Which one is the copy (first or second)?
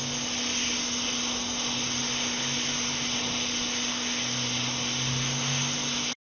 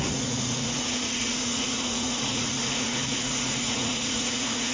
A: second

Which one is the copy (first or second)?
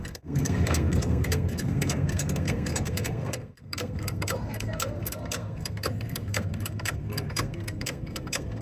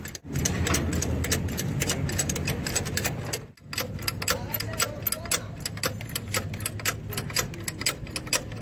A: first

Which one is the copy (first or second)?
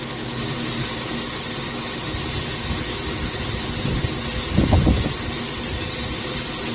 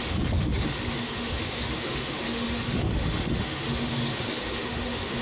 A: second